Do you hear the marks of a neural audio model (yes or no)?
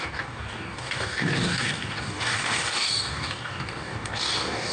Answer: yes